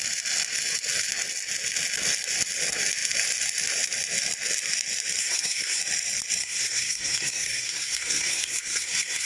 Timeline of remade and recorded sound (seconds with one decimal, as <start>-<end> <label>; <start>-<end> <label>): 0.0-5.2 recorded; 5.2-5.8 remade; 5.8-6.4 recorded; 6.4-9.3 remade